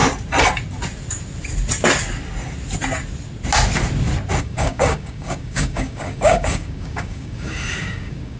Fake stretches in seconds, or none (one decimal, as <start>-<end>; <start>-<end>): 4.4-8.4